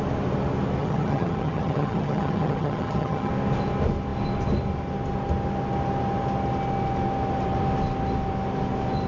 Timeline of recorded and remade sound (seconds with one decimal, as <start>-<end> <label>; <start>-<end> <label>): 0.0-0.8 recorded; 0.8-3.3 remade; 3.3-9.1 recorded